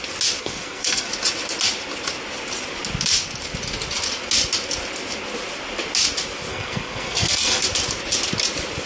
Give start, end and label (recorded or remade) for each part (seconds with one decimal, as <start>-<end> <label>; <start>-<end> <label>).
0.0-0.4 recorded; 0.4-1.1 remade; 1.1-6.5 recorded; 6.5-7.6 remade; 7.6-8.9 recorded